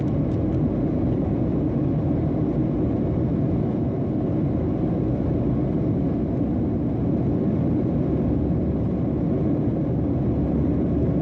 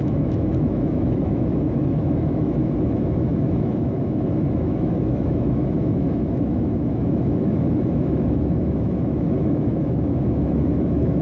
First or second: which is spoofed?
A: second